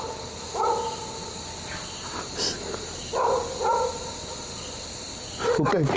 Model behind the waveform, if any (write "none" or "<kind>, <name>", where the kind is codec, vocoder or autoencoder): none